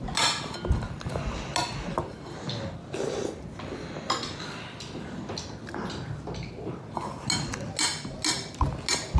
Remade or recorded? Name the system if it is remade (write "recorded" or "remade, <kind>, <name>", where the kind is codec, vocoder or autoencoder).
recorded